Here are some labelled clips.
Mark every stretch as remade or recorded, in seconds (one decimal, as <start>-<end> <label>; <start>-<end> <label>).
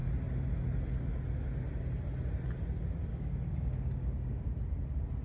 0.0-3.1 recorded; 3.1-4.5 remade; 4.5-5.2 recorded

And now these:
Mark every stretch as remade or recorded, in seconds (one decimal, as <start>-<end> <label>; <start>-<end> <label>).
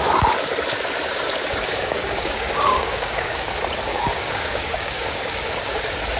0.0-1.5 recorded; 1.5-3.5 remade; 3.5-3.9 recorded; 3.9-5.8 remade; 5.8-6.2 recorded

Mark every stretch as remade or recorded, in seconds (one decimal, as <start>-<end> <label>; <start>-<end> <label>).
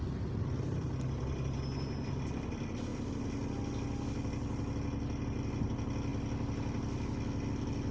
0.0-7.9 recorded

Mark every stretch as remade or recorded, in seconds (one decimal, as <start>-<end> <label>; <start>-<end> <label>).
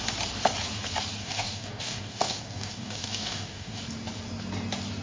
0.0-1.2 recorded; 1.2-3.8 remade; 3.8-5.0 recorded